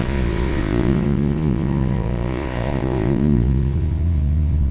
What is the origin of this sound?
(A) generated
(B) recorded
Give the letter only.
A